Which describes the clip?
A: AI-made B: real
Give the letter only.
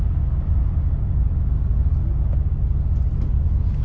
B